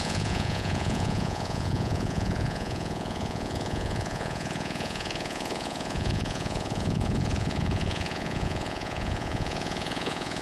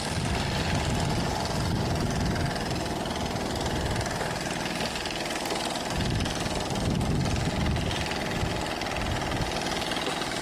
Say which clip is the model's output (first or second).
first